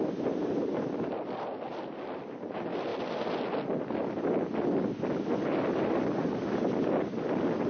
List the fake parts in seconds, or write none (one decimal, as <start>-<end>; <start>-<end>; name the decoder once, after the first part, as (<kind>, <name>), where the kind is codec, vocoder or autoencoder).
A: none